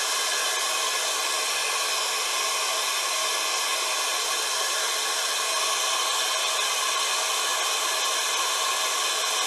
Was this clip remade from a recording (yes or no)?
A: no